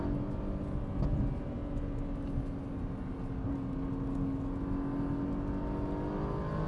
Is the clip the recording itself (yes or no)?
yes